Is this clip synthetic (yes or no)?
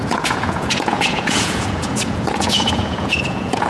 yes